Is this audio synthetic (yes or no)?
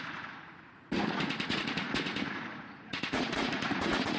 yes